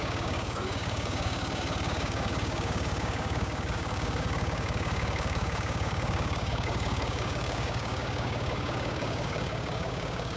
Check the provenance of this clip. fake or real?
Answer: fake